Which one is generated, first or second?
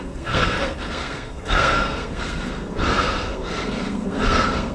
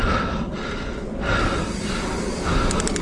first